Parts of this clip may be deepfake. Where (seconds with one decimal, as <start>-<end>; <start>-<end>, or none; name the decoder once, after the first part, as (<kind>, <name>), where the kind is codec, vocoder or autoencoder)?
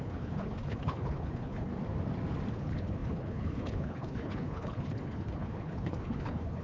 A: 0.0-1.7 (codec, HILCodec); 2.5-6.6